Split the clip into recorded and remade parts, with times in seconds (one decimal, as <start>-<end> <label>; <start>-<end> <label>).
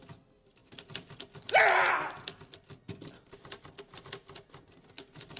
0.0-5.4 recorded